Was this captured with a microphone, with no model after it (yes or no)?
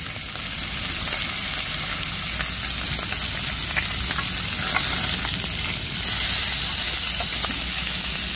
yes